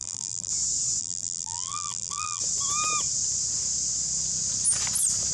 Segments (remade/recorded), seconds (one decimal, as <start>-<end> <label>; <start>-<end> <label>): 0.0-0.5 remade; 0.5-1.0 recorded; 1.0-2.4 remade; 2.4-5.3 recorded